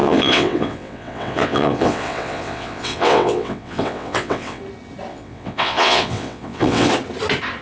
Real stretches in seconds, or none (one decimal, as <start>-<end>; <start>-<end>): 4.6-5.1; 6.9-7.6